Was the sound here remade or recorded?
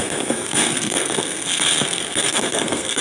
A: remade